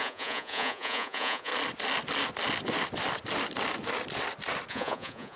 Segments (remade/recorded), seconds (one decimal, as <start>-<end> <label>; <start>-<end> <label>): 0.0-1.5 remade; 1.5-4.7 recorded; 4.7-5.4 remade